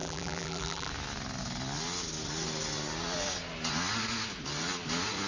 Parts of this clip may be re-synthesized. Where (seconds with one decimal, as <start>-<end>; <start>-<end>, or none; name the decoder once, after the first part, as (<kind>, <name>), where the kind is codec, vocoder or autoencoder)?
0.0-0.9 (vocoder, BigVGAN v2)